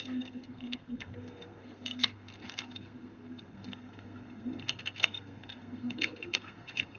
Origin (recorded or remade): remade